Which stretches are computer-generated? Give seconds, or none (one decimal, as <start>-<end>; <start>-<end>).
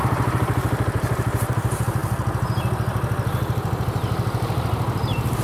0.0-2.0